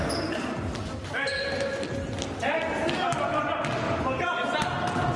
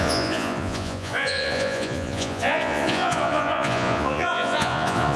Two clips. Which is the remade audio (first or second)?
second